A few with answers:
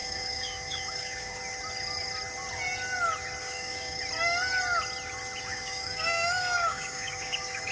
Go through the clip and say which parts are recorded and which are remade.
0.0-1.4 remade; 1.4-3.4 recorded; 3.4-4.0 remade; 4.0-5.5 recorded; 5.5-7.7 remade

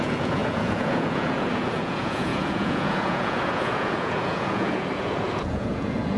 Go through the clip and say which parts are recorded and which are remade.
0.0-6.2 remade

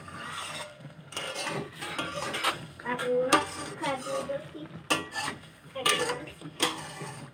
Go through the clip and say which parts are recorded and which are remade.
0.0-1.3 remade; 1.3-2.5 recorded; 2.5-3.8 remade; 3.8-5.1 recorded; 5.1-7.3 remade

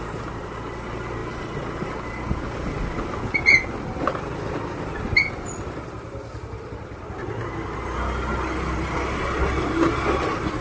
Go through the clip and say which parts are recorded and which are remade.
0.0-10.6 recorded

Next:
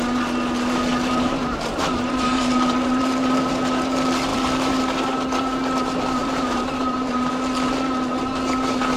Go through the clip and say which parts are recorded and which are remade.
0.0-0.9 recorded; 0.9-3.5 remade; 3.5-4.3 recorded; 4.3-4.8 remade; 4.8-6.2 recorded; 6.2-7.3 remade; 7.3-9.0 recorded

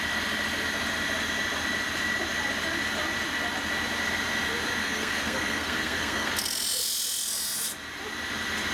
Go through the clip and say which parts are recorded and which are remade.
0.0-4.8 recorded; 4.8-6.3 remade; 6.3-8.7 recorded

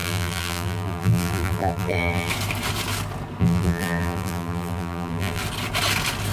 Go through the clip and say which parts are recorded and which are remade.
0.0-2.3 remade; 2.3-3.4 recorded; 3.4-5.4 remade; 5.4-6.3 recorded